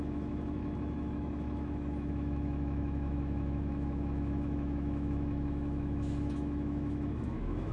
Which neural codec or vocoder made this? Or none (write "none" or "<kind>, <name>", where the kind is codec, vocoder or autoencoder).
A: autoencoder, DAC-VAE